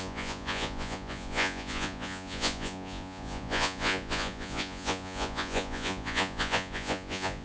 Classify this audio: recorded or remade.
remade